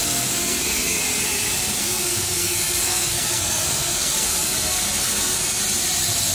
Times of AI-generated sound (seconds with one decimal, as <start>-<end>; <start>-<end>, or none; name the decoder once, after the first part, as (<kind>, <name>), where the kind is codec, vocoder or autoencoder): 0.0-1.0 (codec, SNAC); 1.8-5.6